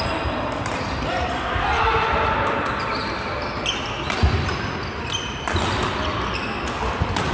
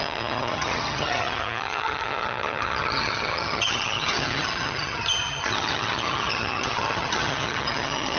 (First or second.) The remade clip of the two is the second